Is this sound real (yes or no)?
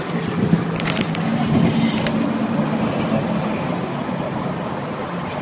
yes